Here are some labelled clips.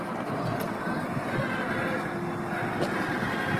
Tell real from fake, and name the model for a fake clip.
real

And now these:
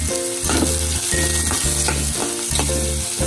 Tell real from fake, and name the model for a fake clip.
real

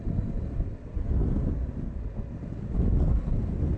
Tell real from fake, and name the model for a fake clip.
real